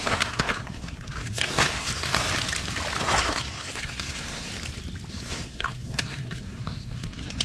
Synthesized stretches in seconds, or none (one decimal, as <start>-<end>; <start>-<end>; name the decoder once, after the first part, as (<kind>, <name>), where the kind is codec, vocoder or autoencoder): 0.0-2.3 (codec, SNAC); 3.0-4.5; 5.1-7.4